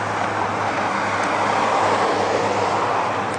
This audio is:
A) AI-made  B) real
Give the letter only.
B